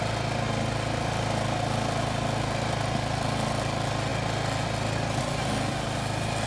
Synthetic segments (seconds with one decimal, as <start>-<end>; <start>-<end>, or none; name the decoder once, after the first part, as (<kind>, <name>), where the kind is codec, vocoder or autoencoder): none

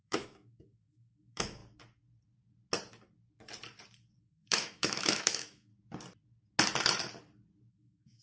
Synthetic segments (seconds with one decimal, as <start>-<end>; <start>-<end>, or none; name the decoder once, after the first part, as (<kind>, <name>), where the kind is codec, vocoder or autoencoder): 0.0-1.6 (autoencoder, DAC-VAE); 4.2-5.7; 7.7-8.2

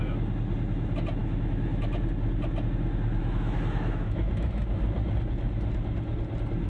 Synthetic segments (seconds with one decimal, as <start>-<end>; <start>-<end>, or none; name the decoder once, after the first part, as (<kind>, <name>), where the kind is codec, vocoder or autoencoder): 1.2-2.0 (autoencoder, DAC-VAE); 3.2-4.6

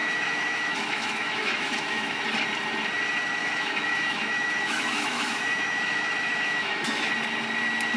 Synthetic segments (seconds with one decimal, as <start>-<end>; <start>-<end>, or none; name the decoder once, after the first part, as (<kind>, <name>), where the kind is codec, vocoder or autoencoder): 0.0-2.2 (autoencoder, DAC-VAE); 3.4-7.1